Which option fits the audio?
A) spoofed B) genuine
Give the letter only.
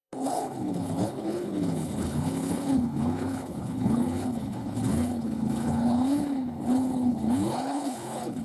A